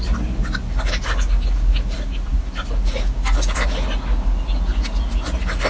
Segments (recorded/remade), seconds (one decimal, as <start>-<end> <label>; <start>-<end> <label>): 0.0-5.7 recorded